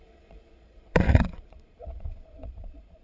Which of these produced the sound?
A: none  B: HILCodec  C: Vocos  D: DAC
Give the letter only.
C